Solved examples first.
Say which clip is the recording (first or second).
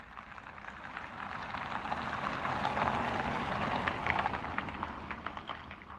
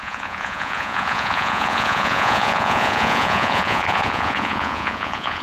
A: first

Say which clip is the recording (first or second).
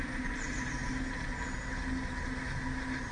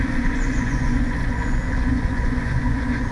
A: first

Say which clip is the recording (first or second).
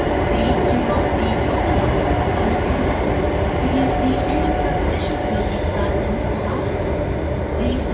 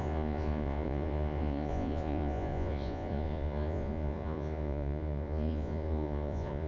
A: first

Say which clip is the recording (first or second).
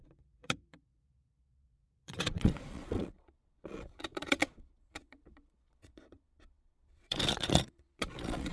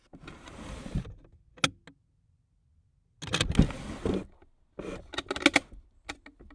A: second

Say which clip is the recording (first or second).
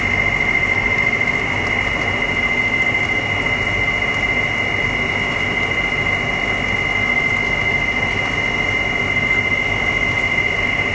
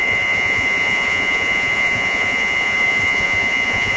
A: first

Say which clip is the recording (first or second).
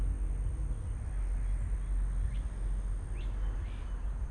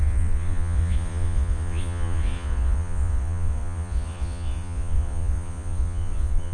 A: first